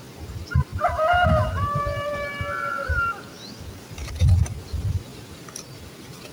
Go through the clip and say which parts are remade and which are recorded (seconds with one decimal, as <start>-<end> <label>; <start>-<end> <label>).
0.0-6.3 recorded